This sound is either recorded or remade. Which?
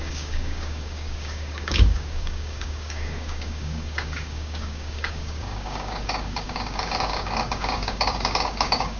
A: remade